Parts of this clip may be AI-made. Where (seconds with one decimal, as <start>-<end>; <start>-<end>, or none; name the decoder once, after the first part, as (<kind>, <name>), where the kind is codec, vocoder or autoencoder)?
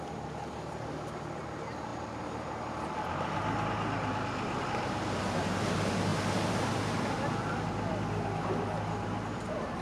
none